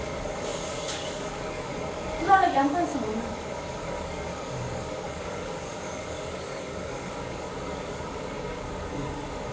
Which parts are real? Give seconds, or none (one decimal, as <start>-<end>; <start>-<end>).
none